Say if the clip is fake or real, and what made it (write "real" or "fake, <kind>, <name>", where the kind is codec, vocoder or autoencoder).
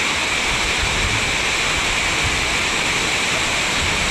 real